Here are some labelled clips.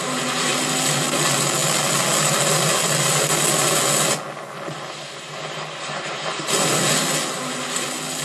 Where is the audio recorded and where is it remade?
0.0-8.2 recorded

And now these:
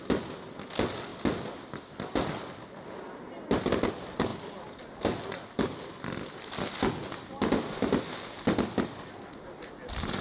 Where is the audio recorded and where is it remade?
0.0-10.2 recorded

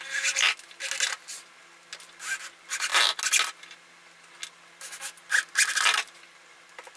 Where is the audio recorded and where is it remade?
0.0-7.0 recorded

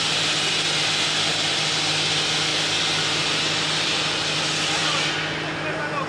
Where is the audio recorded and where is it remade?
0.0-6.1 recorded

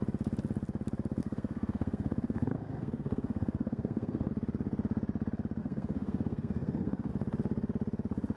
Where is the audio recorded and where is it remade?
0.0-1.2 recorded; 1.2-4.3 remade; 4.3-5.6 recorded; 5.6-7.1 remade; 7.1-8.4 recorded

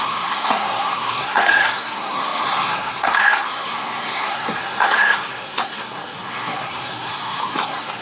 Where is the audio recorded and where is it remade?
0.0-8.0 remade

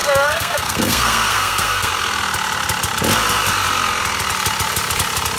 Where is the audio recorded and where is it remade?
0.0-1.9 remade; 1.9-5.4 recorded

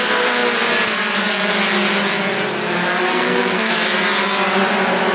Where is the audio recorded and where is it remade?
0.0-3.1 recorded; 3.1-3.7 remade; 3.7-5.1 recorded